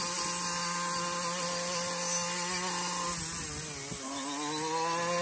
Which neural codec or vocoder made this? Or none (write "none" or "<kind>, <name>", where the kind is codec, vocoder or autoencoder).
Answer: none